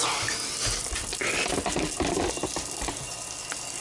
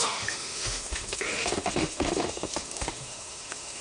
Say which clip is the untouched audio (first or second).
first